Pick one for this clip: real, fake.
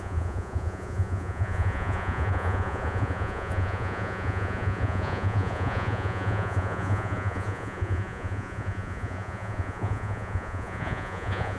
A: fake